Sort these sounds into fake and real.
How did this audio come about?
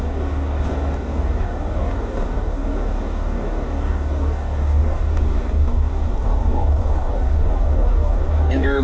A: fake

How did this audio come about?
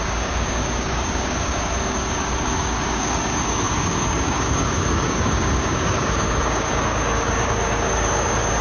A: fake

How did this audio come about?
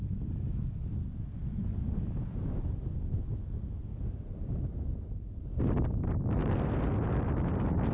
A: real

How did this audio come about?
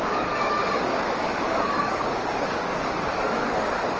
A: fake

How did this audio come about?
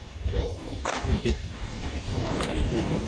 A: fake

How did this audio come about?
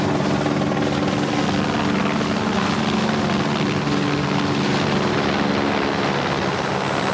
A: real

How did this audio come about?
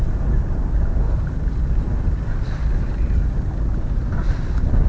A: real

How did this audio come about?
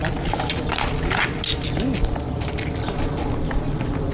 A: real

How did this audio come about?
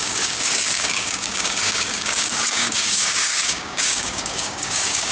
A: fake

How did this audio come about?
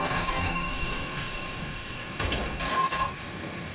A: fake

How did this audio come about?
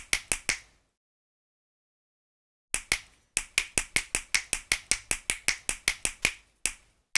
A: real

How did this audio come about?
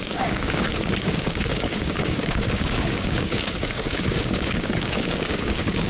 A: fake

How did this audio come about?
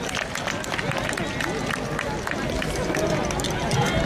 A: real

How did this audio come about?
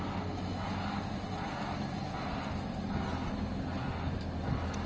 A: real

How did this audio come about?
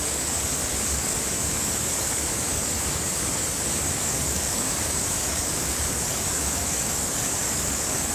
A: fake